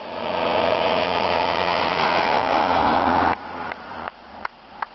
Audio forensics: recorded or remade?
remade